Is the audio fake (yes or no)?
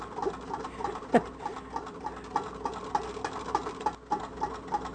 no